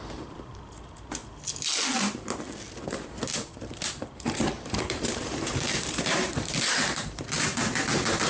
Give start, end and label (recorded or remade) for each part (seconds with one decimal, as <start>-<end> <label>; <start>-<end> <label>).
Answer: 0.0-1.2 remade; 1.2-2.9 recorded; 2.9-8.3 remade